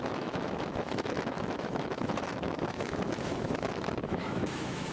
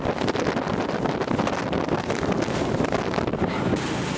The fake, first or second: first